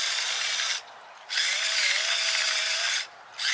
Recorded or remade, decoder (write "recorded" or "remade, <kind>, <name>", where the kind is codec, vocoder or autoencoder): recorded